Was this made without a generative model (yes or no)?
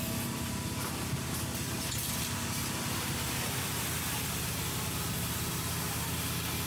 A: yes